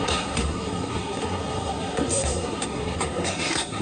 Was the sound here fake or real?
fake